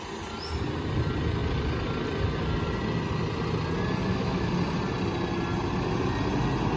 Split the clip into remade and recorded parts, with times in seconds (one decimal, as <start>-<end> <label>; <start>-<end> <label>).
0.0-4.0 recorded; 4.0-4.5 remade; 4.5-6.8 recorded